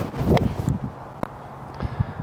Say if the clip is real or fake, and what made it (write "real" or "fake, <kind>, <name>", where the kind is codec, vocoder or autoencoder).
real